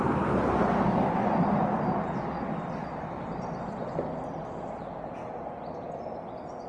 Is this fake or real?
real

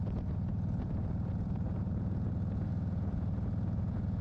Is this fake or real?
fake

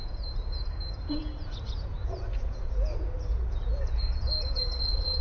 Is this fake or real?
fake